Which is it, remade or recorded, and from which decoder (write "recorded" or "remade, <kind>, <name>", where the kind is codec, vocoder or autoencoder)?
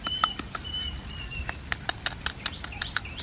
recorded